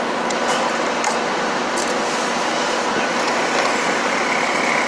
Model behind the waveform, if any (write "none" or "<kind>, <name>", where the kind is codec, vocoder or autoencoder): none